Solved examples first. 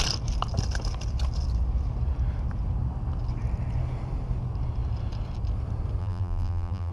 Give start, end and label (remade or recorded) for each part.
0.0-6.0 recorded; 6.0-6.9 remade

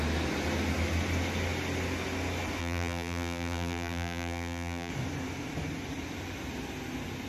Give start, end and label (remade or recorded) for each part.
0.0-2.6 recorded; 2.6-4.9 remade; 4.9-7.3 recorded

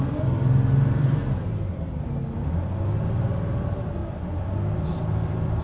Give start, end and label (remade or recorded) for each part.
0.0-1.2 remade; 1.2-3.6 recorded; 3.6-4.0 remade; 4.0-4.9 recorded; 4.9-5.6 remade

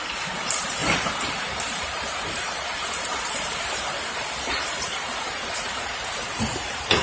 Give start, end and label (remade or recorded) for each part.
0.0-7.0 remade

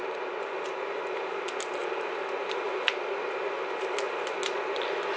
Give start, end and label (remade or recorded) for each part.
0.0-1.8 recorded; 1.8-4.6 remade; 4.6-5.2 recorded

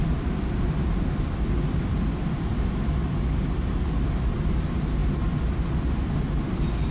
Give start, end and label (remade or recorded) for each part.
0.0-6.9 recorded

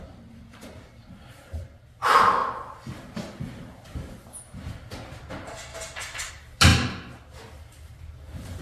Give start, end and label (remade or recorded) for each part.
0.0-2.4 remade; 2.4-5.3 recorded; 5.3-5.7 remade; 5.7-6.3 recorded; 6.3-6.7 remade; 6.7-8.0 recorded; 8.0-8.6 remade

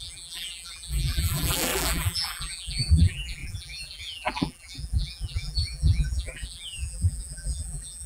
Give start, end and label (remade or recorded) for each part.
0.0-8.1 remade